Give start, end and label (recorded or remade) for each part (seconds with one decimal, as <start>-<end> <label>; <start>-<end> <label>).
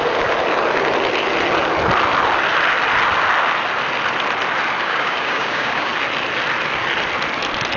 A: 0.0-4.8 recorded; 4.8-5.9 remade; 5.9-7.8 recorded